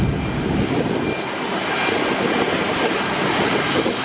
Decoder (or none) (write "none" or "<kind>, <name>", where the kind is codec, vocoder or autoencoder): none